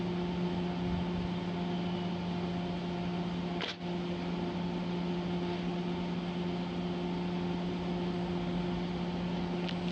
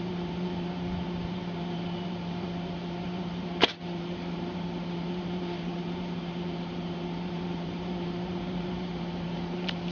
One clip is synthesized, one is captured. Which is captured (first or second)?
first